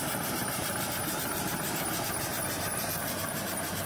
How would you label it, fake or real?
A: fake